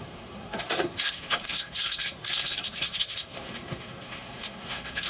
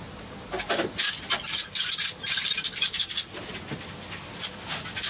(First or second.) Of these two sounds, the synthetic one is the first